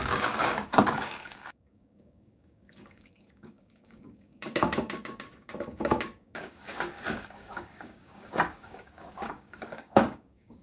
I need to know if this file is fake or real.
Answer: fake